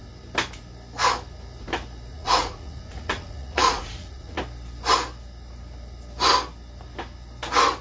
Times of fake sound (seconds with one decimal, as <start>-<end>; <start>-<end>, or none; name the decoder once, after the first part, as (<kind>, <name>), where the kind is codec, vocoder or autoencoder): 2.1-4.4 (vocoder, Vocos)